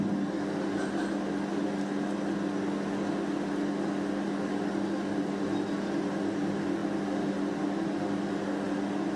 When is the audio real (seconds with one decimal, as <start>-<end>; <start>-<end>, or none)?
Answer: 0.0-9.2